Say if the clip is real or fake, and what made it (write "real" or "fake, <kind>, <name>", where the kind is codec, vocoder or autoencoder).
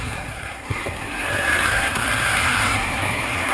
fake, codec, SNAC